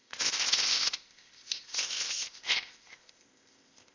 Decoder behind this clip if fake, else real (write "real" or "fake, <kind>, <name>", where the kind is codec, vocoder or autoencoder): fake, codec, ZipCodec